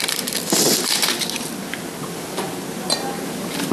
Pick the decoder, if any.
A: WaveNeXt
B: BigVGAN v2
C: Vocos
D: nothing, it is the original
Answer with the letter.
D